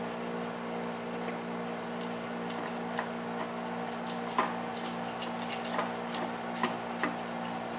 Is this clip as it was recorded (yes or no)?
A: yes